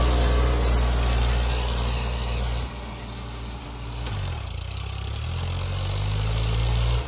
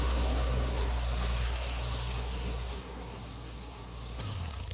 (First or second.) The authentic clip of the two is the first